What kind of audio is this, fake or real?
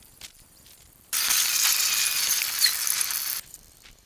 real